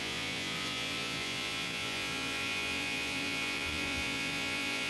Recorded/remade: remade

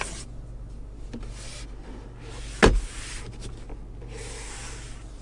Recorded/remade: recorded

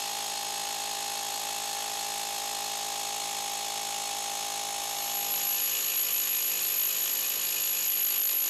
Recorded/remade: recorded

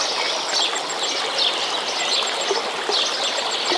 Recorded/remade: recorded